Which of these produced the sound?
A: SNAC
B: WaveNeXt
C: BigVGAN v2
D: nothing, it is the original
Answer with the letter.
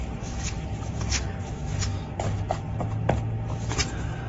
D